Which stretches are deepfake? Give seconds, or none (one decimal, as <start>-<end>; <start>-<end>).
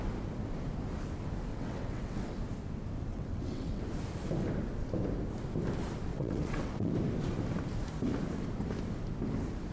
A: 1.5-2.3; 3.1-3.8; 6.1-6.9